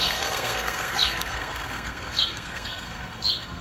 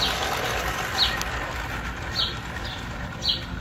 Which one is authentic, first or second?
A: second